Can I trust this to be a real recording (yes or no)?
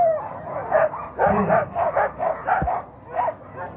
yes